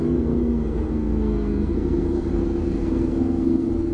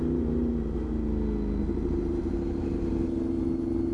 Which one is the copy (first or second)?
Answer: first